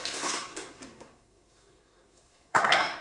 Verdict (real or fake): fake